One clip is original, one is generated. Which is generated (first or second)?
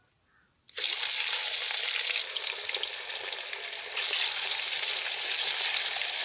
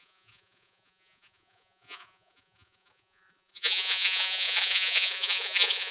second